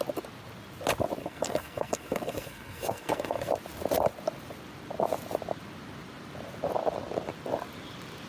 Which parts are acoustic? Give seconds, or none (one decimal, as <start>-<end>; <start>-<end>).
0.0-1.2; 3.5-8.3